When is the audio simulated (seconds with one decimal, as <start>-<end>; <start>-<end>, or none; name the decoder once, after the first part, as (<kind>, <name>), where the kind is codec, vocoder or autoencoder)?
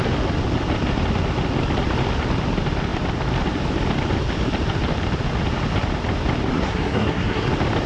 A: 6.5-7.5 (codec, SNAC)